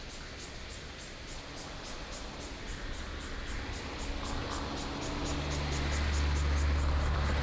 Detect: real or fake real